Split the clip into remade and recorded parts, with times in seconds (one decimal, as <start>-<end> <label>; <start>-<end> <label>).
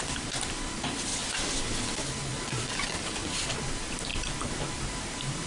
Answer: 0.0-1.1 recorded; 1.1-1.6 remade; 1.6-5.5 recorded